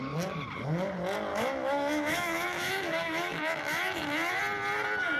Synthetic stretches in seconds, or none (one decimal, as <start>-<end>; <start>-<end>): 1.3-4.4